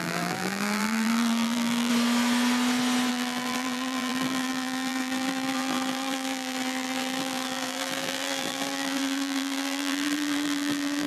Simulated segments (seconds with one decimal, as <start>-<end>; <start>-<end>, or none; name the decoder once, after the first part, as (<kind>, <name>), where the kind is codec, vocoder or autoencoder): 0.0-1.9 (vocoder, BigVGAN v2); 3.1-11.1